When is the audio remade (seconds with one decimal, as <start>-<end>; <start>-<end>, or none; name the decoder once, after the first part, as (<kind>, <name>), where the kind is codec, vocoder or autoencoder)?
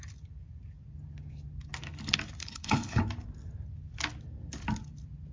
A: 2.4-3.0 (codec, HILCodec)